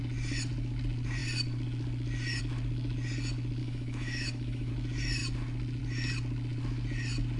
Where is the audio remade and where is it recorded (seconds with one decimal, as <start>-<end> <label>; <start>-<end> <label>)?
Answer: 0.0-3.6 recorded; 3.6-4.7 remade; 4.7-7.4 recorded